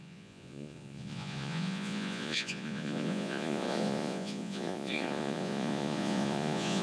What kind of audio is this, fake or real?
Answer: fake